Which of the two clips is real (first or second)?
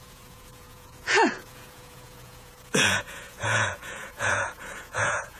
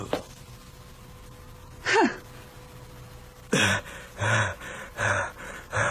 second